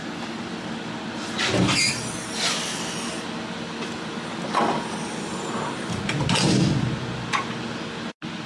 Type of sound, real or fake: real